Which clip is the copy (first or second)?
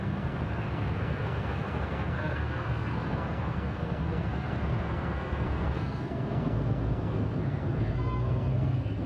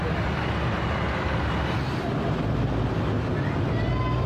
first